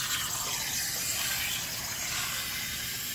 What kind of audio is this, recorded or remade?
recorded